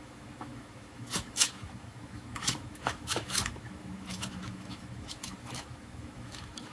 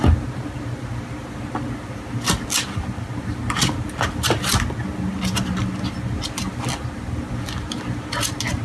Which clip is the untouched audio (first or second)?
second